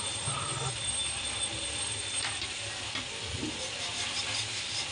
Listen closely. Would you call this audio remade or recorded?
recorded